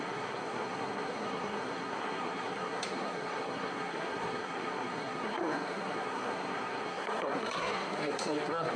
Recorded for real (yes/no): no